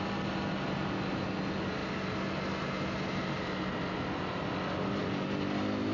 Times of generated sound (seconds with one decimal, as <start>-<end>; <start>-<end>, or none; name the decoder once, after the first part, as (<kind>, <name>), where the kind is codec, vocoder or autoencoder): none